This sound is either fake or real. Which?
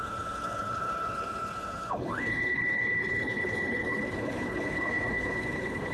fake